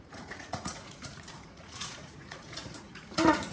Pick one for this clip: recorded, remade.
remade